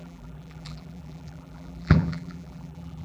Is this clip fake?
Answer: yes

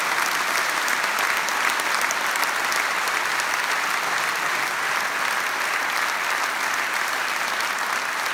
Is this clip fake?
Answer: no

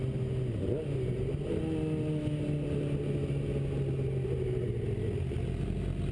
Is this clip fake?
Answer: no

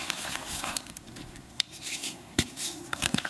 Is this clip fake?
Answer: yes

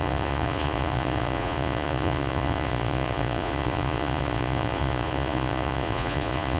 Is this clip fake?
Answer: yes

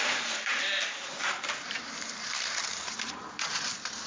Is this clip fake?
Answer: yes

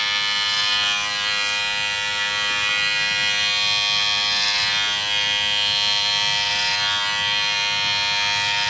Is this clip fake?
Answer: no